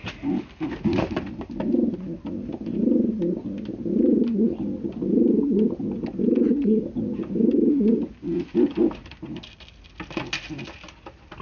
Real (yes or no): yes